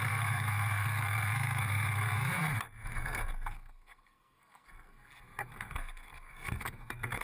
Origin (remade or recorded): remade